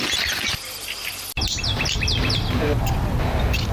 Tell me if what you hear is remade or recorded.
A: recorded